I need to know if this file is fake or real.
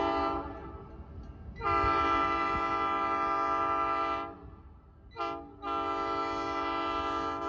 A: real